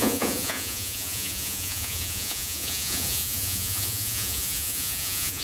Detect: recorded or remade remade